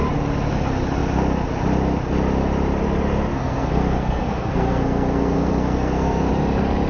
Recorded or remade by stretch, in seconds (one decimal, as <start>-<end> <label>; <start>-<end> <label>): 0.0-3.3 recorded; 3.3-6.3 remade; 6.3-6.9 recorded